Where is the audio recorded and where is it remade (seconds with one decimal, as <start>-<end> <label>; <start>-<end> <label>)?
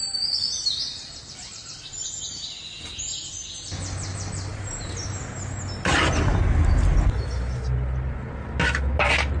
0.0-1.6 recorded; 1.6-2.1 remade; 2.1-4.5 recorded; 4.5-5.2 remade; 5.2-9.4 recorded